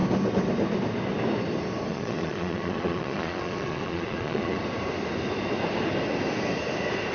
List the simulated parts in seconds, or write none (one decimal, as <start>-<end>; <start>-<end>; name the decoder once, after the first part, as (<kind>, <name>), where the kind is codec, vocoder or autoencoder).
1.9-4.6 (vocoder, Vocos)